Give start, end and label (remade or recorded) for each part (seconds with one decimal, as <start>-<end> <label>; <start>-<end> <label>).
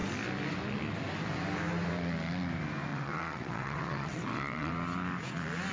0.0-2.9 recorded; 2.9-4.7 remade; 4.7-5.7 recorded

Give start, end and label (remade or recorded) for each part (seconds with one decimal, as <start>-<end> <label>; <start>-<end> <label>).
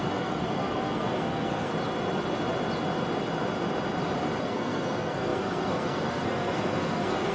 0.0-1.7 remade; 1.7-4.4 recorded; 4.4-7.3 remade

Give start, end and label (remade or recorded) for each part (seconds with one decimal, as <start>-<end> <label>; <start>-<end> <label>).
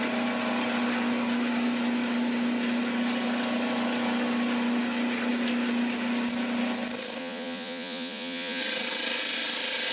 0.0-7.2 recorded; 7.2-8.6 remade; 8.6-9.9 recorded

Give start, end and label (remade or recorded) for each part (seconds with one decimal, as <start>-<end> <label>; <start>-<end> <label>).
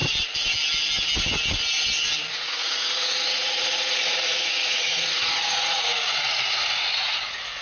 0.0-2.3 recorded; 2.3-7.6 remade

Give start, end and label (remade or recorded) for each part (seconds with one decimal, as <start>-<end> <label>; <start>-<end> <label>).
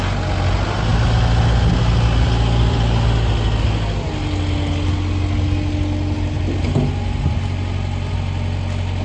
0.0-9.0 recorded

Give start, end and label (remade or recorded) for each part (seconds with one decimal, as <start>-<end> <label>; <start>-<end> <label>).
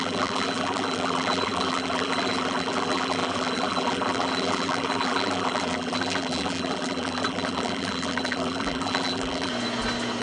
0.0-9.5 remade; 9.5-10.2 recorded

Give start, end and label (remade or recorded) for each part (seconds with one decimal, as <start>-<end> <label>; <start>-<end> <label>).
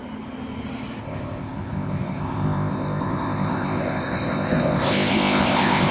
0.0-1.0 recorded; 1.0-5.9 remade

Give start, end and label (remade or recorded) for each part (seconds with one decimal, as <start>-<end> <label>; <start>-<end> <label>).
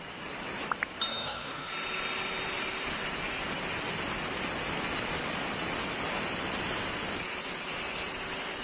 0.0-1.1 recorded; 1.1-1.7 remade; 1.7-8.6 recorded